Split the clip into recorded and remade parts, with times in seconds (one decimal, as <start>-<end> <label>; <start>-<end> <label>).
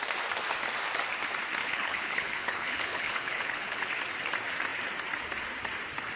0.0-1.6 recorded; 1.6-3.9 remade; 3.9-6.2 recorded